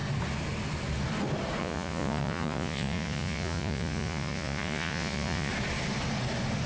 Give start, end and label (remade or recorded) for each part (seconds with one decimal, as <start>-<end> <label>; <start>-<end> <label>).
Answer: 0.0-1.6 recorded; 1.6-5.5 remade; 5.5-6.7 recorded